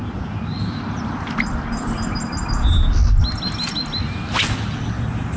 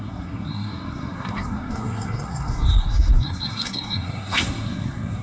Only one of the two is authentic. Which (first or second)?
first